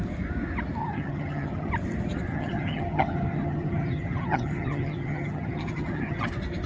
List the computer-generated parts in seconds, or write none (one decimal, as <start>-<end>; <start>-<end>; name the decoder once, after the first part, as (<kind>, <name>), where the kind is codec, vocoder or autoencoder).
0.8-1.7 (vocoder, HiFi-GAN); 2.3-6.3